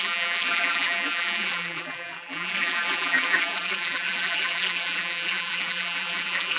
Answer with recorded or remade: remade